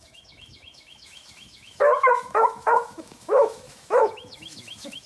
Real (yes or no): no